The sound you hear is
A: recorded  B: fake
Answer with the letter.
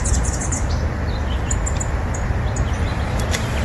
A